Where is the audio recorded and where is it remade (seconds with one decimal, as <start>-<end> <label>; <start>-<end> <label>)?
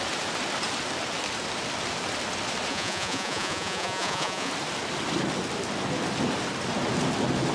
0.0-2.7 recorded; 2.7-4.5 remade; 4.5-7.5 recorded